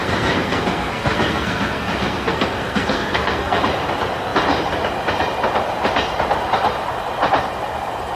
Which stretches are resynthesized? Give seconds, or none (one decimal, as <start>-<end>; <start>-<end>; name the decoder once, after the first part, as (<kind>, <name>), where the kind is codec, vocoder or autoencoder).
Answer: 0.0-3.6 (codec, SNAC)